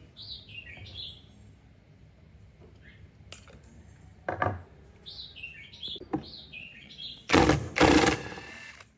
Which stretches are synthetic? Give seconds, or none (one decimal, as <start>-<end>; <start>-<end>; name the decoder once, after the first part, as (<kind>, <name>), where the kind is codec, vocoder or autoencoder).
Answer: 6.6-7.4 (vocoder, Vocos)

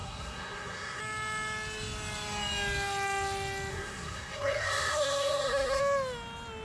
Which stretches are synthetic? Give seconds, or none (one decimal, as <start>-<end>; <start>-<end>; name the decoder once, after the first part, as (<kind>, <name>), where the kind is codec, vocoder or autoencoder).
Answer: 0.0-1.0 (codec, SNAC); 3.7-5.8

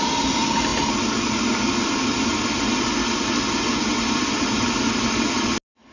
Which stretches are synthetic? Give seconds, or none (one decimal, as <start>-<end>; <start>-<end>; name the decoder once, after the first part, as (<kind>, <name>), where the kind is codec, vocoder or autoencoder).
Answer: none

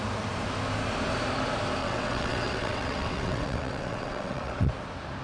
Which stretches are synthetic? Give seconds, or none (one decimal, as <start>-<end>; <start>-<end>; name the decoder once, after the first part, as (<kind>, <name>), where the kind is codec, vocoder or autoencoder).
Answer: 1.8-4.7 (vocoder, WaveNeXt)

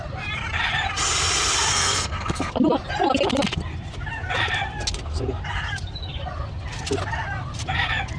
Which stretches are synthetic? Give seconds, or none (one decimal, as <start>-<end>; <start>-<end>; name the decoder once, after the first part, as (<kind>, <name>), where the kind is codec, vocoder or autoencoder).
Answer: 1.7-2.5 (codec, SNAC)